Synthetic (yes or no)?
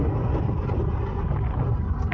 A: no